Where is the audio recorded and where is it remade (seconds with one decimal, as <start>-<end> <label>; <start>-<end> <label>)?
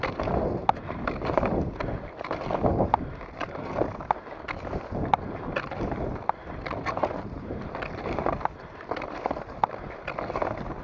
0.0-0.6 recorded; 0.6-1.7 remade; 1.7-10.8 recorded